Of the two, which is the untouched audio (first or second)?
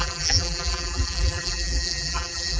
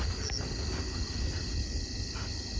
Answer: second